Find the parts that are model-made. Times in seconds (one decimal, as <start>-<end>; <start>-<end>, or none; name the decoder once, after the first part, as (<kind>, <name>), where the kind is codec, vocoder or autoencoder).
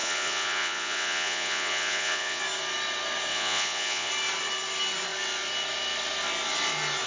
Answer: 0.0-2.4 (vocoder, Vocos); 3.3-4.1